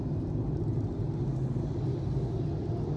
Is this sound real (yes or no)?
yes